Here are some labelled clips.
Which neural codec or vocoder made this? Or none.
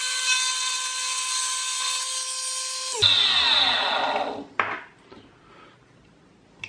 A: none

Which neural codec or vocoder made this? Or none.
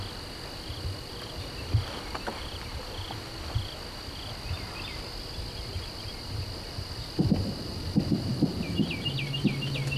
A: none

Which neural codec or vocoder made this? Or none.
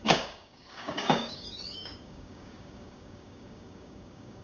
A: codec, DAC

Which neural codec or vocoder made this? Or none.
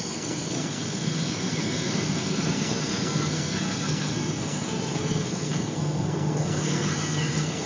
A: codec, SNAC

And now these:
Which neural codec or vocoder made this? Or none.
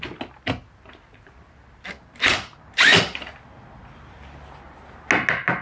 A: none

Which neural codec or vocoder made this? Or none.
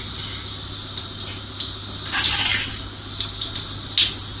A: none